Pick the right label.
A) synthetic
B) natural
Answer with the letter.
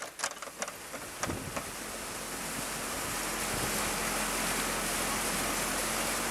B